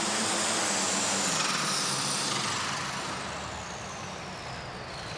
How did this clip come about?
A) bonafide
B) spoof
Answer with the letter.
A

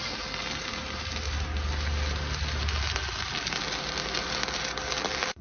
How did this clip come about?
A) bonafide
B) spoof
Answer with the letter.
A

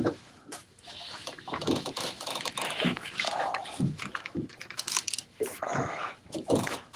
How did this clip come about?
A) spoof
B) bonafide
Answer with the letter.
A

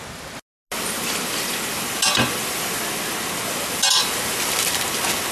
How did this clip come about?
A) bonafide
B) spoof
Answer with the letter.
A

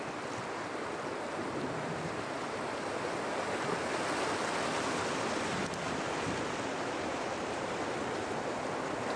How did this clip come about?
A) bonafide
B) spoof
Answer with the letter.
A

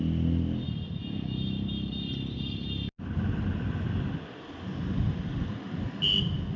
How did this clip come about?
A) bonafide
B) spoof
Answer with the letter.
A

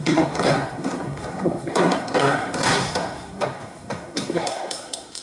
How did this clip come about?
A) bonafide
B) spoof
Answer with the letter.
B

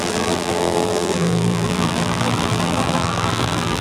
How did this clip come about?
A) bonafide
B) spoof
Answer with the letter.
B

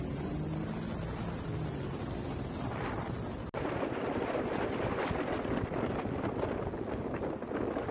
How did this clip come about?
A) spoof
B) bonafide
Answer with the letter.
B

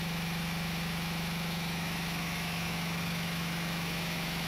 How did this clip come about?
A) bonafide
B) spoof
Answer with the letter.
B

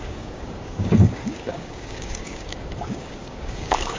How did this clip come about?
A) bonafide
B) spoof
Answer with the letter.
B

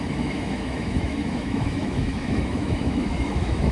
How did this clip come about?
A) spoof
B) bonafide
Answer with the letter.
A